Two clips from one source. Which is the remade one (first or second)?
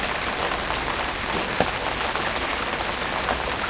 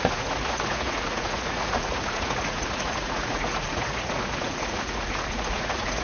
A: second